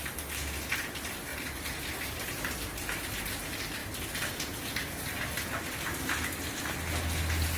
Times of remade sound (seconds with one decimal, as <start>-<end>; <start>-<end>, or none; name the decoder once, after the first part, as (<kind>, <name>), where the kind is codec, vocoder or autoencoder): 1.3-2.4 (vocoder, BigVGAN v2)